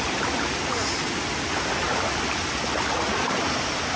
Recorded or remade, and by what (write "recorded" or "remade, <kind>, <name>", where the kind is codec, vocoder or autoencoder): recorded